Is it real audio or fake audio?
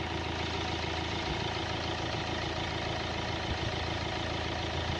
real